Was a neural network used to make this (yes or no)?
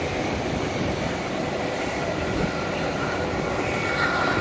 no